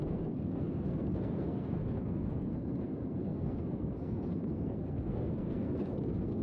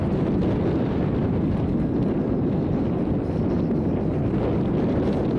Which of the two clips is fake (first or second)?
first